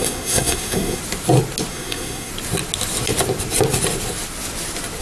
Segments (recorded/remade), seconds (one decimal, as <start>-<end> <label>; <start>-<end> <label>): 0.0-1.0 remade; 1.0-1.7 recorded; 1.7-2.3 remade; 2.3-5.0 recorded